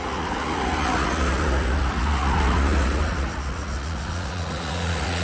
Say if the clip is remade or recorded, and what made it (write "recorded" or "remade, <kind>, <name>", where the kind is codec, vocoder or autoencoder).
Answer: remade, vocoder, Vocos